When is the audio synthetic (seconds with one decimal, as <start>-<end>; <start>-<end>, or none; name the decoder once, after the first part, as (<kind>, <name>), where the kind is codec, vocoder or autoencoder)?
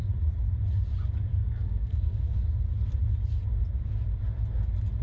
1.3-2.4 (codec, SNAC)